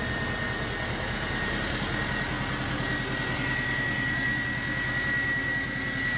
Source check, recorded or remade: recorded